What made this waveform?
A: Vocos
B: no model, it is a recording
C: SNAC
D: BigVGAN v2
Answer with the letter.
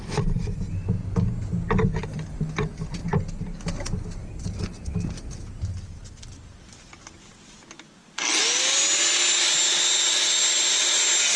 B